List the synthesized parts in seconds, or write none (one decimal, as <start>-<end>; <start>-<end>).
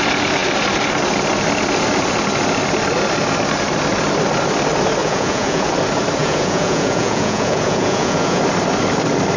5.0-5.7; 6.2-8.4